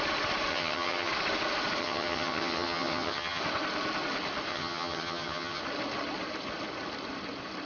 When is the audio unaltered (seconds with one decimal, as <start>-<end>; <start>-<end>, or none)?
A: 0.0-0.5; 1.1-1.8; 3.4-4.5; 5.6-7.7